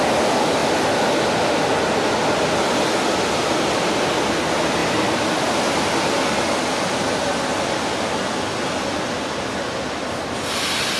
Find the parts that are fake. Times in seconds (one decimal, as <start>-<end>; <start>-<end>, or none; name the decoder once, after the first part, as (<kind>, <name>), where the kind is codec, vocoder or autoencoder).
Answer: none